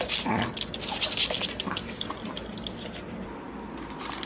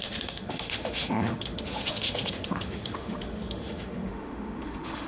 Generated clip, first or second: second